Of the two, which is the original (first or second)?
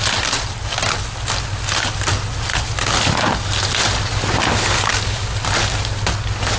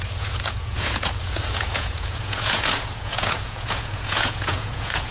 first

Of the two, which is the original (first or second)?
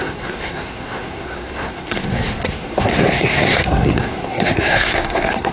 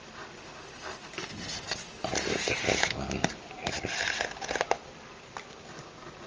second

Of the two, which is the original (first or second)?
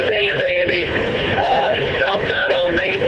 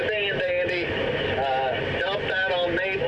second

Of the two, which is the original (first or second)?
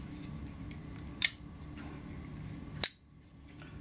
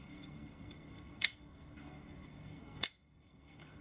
first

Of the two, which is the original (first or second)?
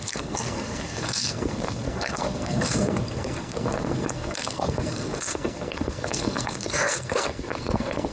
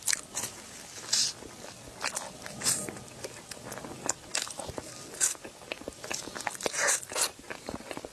second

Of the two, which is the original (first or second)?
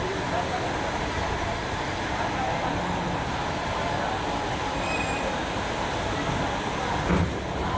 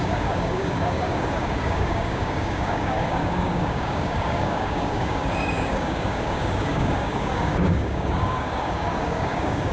first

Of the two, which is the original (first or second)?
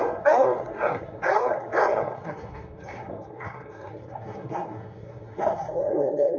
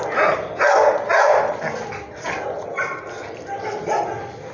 second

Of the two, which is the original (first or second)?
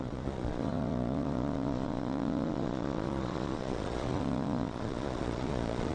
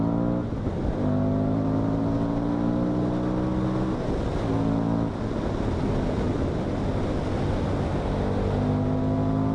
second